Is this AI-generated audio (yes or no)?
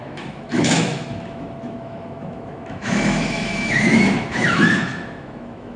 yes